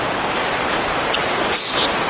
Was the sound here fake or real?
fake